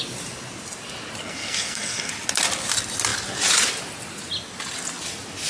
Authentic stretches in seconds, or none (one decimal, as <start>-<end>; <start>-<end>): 0.0-1.2; 2.1-5.5

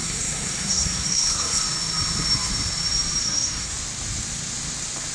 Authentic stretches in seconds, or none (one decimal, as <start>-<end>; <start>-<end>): 1.6-3.2; 3.7-5.1